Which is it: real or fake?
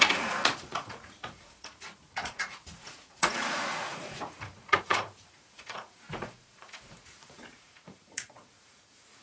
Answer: fake